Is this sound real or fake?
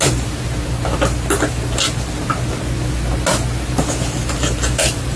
real